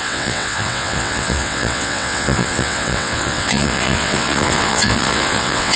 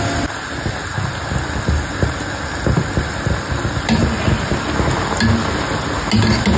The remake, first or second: first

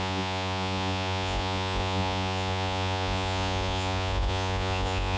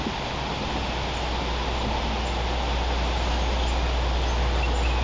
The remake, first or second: first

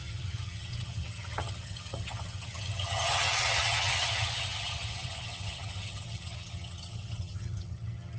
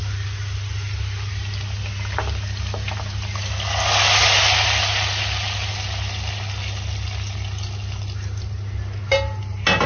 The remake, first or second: first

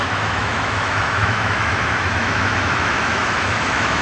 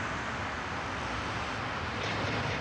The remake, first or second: first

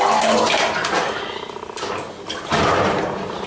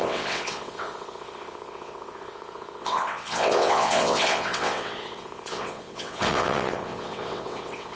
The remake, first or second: second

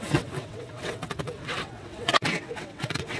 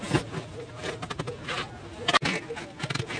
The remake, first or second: first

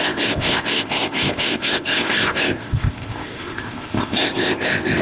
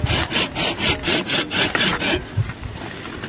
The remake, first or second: first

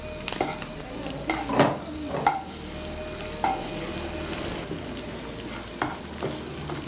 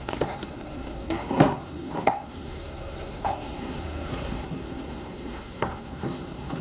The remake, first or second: second